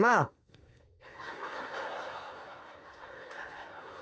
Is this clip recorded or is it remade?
remade